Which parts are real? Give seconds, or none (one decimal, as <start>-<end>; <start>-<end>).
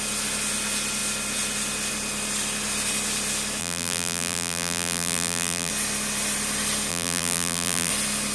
0.0-3.6; 5.7-6.9; 7.9-8.3